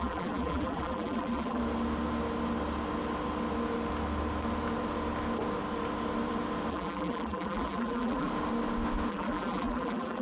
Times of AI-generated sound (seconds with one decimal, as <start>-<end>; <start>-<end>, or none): 0.0-1.6; 6.7-8.3; 9.1-10.2